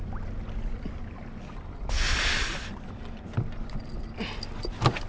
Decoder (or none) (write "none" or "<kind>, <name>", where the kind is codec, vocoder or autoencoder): none